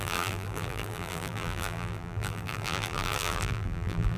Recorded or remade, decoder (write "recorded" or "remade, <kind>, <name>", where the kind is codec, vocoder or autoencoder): remade, vocoder, BigVGAN v2